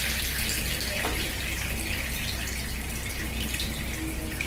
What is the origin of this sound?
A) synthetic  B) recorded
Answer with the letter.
B